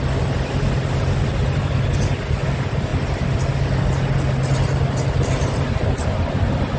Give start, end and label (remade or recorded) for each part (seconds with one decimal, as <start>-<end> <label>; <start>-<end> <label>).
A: 0.0-6.8 recorded